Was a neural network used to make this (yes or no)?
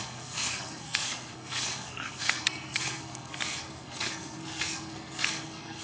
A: yes